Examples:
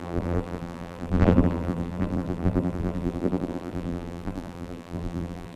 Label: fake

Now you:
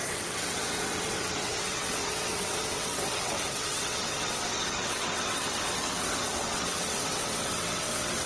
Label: fake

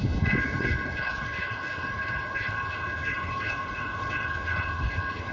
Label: fake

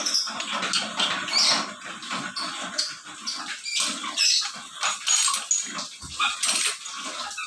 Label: real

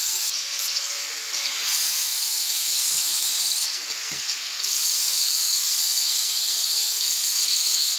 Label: fake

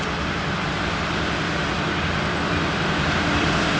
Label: real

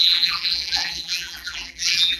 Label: fake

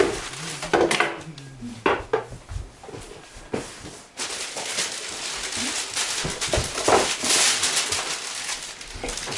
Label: real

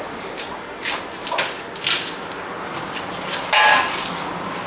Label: real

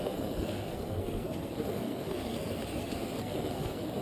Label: fake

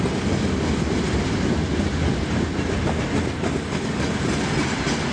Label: real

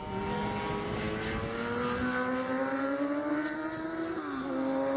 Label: real